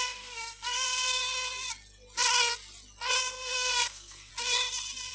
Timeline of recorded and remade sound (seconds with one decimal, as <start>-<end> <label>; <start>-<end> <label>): 0.0-1.2 remade; 1.2-3.2 recorded; 3.2-4.3 remade; 4.3-5.1 recorded